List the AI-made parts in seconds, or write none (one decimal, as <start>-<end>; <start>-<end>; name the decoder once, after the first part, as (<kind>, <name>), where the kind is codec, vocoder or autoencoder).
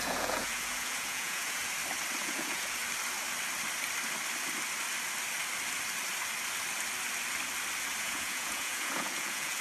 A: 0.0-1.6 (vocoder, Vocos); 2.2-2.8; 8.0-9.6